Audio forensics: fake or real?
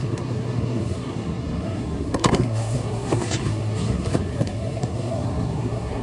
fake